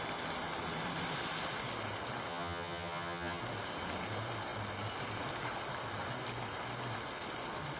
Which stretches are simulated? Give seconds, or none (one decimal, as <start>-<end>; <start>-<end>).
2.3-3.4